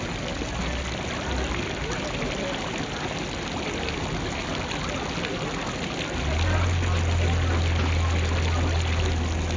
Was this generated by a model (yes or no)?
no